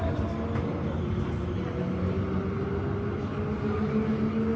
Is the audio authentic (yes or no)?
yes